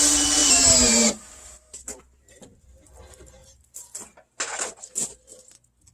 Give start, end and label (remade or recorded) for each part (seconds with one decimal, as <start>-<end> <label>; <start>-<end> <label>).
0.0-0.4 recorded; 0.4-2.3 remade; 2.3-5.9 recorded